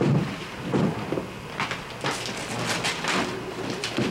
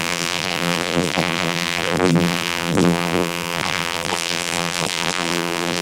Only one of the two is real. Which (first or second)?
first